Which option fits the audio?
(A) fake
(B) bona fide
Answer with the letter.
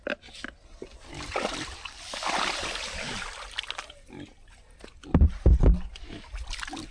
B